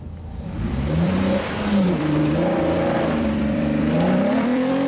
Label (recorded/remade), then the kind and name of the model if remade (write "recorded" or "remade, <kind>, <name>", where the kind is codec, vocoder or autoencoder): remade, vocoder, BigVGAN v2